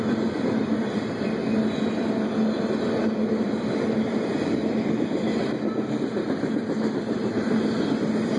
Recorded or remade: recorded